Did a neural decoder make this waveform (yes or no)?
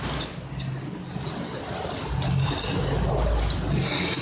no